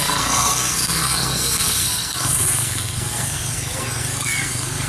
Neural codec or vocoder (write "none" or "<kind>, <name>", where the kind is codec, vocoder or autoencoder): codec, SNAC